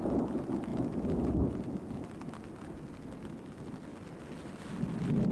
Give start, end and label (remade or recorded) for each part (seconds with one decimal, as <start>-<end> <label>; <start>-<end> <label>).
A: 0.0-5.3 recorded